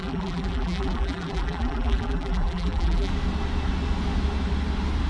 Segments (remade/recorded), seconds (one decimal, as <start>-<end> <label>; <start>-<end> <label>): 0.0-3.1 remade; 3.1-5.1 recorded